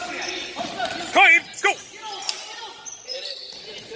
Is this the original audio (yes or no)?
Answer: yes